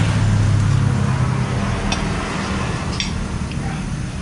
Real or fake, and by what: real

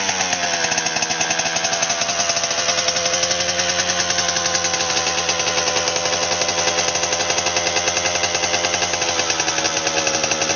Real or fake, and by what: real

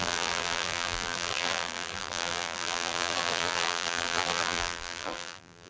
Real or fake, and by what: fake, vocoder, BigVGAN v2